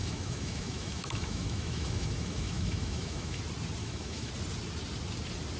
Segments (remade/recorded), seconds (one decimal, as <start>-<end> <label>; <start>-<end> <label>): 0.0-3.4 remade; 3.4-3.8 recorded; 3.8-4.3 remade; 4.3-5.6 recorded